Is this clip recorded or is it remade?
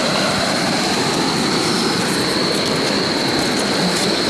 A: recorded